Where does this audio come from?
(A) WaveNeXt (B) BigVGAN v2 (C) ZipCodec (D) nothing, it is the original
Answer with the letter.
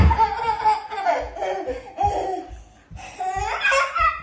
D